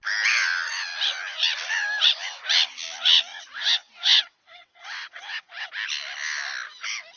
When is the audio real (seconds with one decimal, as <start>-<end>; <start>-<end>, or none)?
0.0-3.3; 5.7-7.2